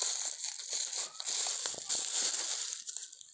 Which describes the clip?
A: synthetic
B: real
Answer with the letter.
B